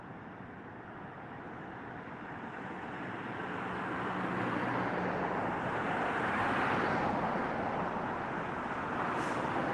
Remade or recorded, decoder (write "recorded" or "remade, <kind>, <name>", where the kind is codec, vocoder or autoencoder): recorded